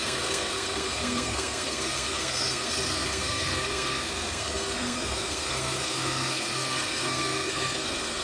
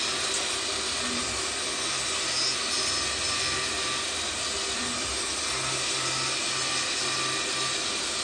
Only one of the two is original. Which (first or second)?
second